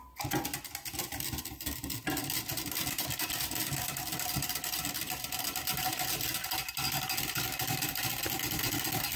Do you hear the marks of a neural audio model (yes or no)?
no